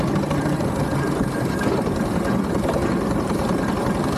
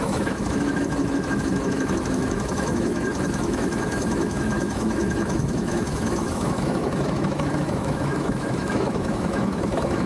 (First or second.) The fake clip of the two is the second